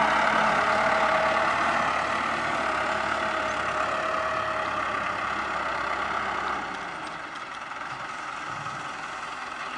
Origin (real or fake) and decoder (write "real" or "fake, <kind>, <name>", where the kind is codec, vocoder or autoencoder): real